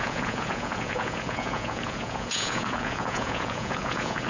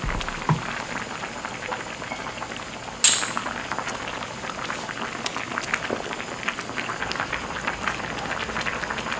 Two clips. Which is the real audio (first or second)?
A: second